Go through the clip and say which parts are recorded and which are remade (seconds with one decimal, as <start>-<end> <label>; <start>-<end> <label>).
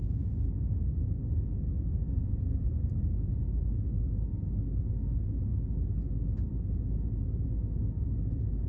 0.0-1.9 recorded; 1.9-3.3 remade; 3.3-8.7 recorded